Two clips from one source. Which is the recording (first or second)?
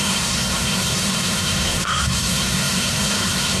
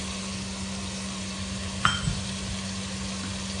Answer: second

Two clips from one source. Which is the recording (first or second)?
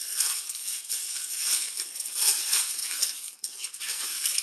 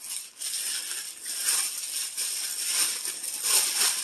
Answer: second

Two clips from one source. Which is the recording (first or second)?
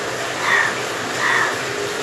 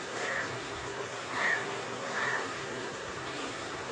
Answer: first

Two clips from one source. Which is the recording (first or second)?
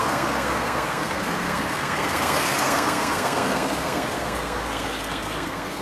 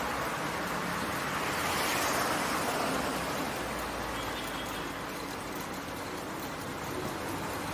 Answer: second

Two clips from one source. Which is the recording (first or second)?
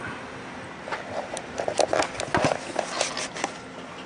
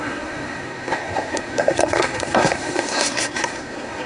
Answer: first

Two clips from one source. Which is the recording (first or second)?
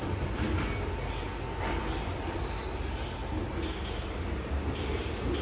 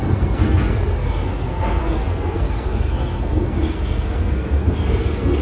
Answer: first